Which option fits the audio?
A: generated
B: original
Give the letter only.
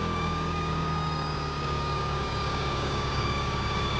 A